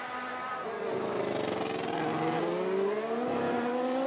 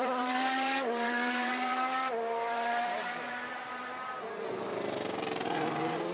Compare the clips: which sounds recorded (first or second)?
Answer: first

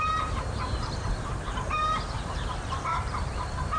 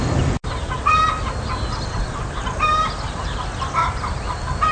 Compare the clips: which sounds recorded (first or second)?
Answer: second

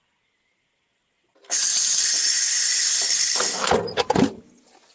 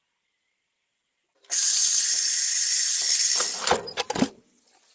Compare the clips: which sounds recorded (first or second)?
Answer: first